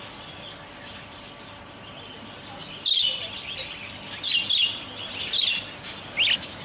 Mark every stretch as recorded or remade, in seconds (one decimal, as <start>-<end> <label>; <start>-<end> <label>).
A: 0.0-2.6 recorded; 2.6-3.3 remade; 3.3-4.6 recorded; 4.6-5.1 remade; 5.1-6.6 recorded